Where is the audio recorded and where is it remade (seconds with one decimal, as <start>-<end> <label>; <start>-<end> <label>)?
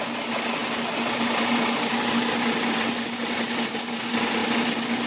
0.0-5.1 recorded